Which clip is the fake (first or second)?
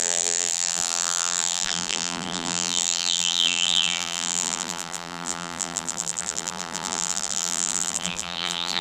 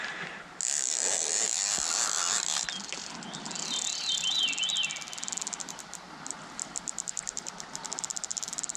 first